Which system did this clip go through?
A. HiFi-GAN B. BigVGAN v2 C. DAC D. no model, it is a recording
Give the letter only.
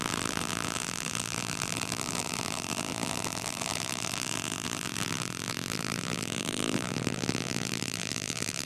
B